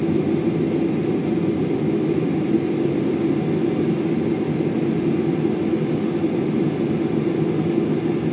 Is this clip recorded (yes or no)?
yes